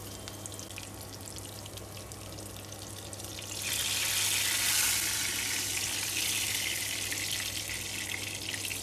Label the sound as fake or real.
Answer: real